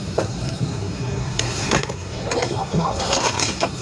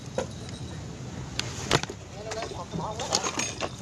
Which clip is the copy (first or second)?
first